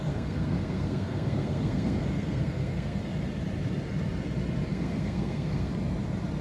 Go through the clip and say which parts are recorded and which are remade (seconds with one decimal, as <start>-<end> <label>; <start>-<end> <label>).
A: 0.0-3.0 remade; 3.0-4.7 recorded; 4.7-5.7 remade; 5.7-6.4 recorded